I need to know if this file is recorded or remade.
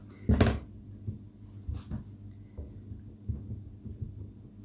recorded